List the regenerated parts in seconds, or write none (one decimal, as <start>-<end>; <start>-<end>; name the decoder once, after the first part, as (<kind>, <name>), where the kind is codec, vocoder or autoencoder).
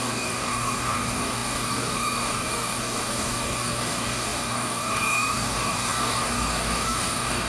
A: 0.0-7.5 (codec, DAC)